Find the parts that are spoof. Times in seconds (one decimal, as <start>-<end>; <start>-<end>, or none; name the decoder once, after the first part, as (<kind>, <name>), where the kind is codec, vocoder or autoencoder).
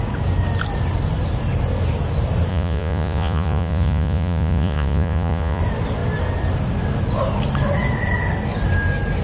2.5-5.6 (vocoder, Vocos)